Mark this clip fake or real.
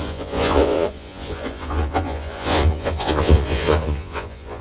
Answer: fake